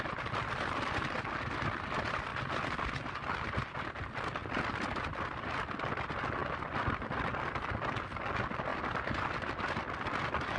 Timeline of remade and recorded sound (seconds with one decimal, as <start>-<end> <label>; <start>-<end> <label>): 0.0-4.4 recorded; 4.4-5.3 remade; 5.3-8.7 recorded; 8.7-10.1 remade; 10.1-10.6 recorded